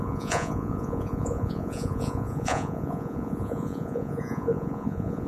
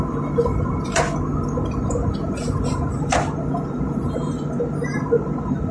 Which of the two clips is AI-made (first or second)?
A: first